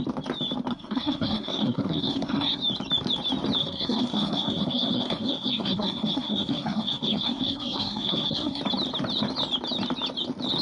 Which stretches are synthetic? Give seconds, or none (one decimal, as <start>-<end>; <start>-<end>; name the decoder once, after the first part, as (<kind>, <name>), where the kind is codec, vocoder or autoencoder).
0.7-2.6 (codec, SNAC); 3.6-8.6